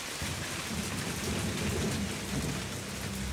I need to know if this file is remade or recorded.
recorded